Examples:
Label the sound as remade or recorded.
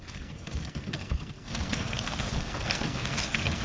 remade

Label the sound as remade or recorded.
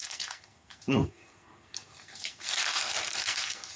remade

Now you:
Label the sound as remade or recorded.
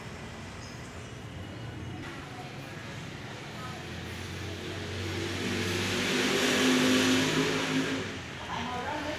recorded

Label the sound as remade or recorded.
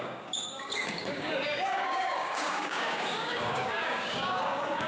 remade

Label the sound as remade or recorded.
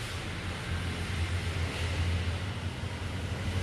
recorded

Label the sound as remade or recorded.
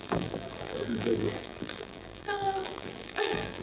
remade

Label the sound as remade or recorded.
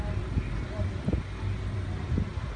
recorded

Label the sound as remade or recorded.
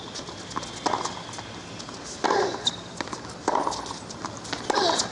recorded